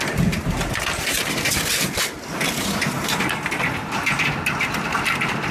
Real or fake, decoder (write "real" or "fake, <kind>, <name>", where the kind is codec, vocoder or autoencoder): real